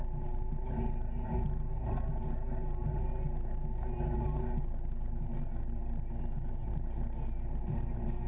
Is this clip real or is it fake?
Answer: real